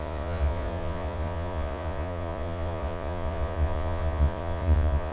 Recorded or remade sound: remade